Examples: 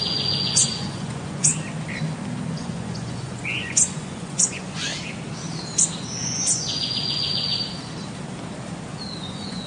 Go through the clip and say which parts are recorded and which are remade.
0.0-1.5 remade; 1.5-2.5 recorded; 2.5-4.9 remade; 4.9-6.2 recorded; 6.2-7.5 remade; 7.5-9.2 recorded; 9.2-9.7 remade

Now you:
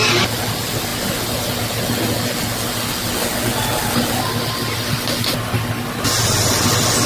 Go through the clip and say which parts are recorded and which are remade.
0.0-7.1 recorded

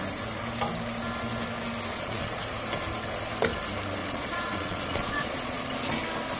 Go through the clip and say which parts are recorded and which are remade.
0.0-1.9 recorded; 1.9-2.4 remade; 2.4-4.0 recorded; 4.0-5.6 remade; 5.6-6.4 recorded

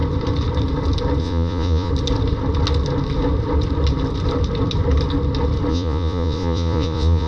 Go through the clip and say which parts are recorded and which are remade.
0.0-1.2 recorded; 1.2-1.9 remade; 1.9-5.7 recorded; 5.7-7.3 remade